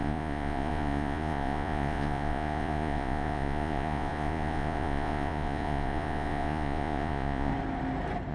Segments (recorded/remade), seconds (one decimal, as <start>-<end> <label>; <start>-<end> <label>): 0.0-7.5 remade; 7.5-8.3 recorded